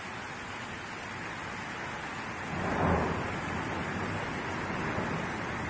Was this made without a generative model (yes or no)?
yes